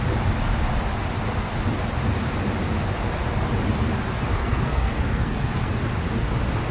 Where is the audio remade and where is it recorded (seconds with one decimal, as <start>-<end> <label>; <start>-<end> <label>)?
0.0-4.4 recorded; 4.4-5.8 remade; 5.8-6.7 recorded